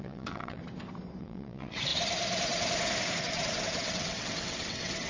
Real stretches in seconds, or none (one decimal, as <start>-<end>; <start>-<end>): 0.6-1.2; 1.9-3.2